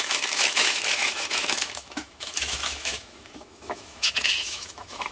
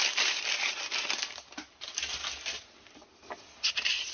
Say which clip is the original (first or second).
second